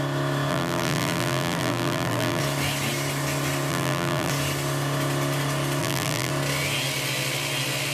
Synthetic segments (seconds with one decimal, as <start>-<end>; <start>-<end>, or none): 0.5-2.4; 3.7-4.3; 5.8-6.3